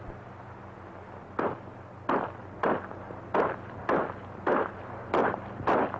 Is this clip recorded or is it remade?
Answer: recorded